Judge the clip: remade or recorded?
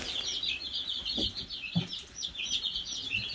recorded